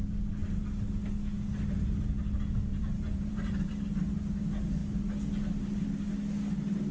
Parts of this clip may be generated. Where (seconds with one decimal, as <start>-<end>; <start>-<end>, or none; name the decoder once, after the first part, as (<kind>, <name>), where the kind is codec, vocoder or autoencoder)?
2.7-3.7 (vocoder, BigVGAN v2)